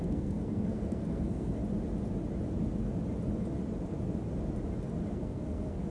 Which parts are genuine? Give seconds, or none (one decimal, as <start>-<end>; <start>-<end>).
1.6-5.1

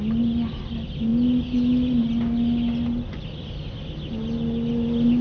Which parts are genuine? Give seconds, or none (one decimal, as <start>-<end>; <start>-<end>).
0.0-5.2

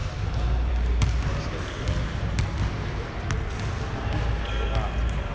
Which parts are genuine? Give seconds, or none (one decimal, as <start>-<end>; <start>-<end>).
0.0-5.3

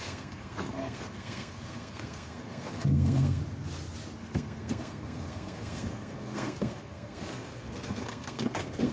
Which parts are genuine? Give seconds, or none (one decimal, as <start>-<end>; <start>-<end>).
3.4-4.2

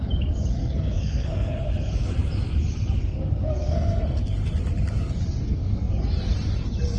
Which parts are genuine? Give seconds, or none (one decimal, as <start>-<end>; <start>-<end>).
0.0-0.6; 1.5-3.0; 4.2-5.4; 5.9-7.0

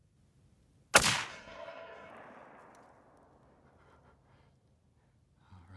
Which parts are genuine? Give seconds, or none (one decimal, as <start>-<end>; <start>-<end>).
0.0-1.3; 2.1-5.8